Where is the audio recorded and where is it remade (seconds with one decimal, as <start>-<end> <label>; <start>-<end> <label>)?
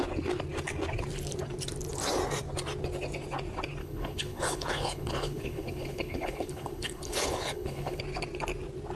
0.0-3.8 recorded; 3.8-8.0 remade; 8.0-9.0 recorded